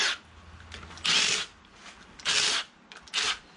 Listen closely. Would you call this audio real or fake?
real